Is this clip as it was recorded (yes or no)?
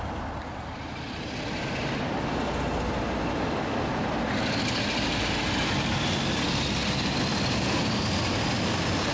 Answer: yes